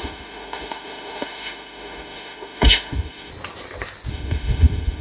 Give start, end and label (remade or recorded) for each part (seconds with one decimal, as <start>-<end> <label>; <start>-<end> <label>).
0.0-3.3 remade; 3.3-4.1 recorded; 4.1-5.0 remade